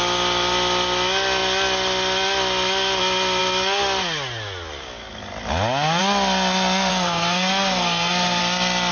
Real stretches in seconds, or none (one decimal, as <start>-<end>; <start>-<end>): 0.0-6.9; 8.4-8.9

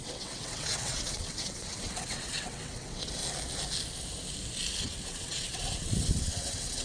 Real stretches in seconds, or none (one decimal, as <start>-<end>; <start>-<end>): 3.2-4.8